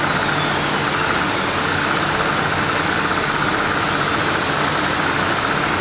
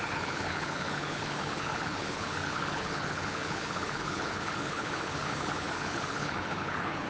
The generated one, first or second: second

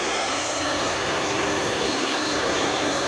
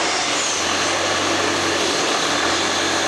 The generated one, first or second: first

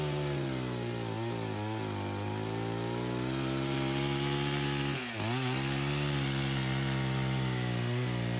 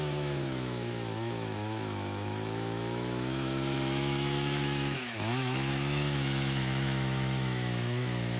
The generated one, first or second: second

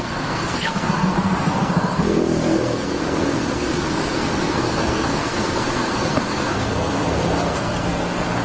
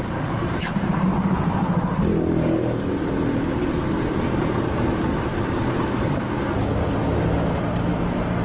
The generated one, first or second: first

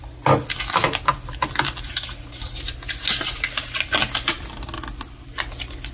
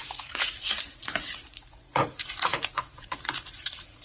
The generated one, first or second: second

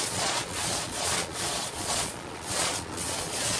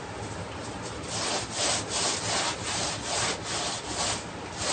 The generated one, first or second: first